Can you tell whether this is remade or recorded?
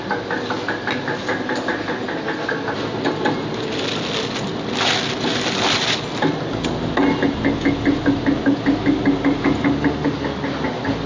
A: recorded